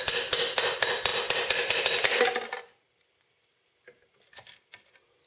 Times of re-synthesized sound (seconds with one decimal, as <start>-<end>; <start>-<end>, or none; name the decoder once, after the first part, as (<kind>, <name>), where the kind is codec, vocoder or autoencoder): none